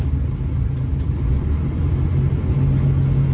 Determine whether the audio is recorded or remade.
recorded